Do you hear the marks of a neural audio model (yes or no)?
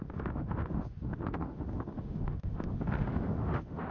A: yes